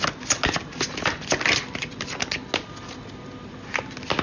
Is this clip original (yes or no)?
yes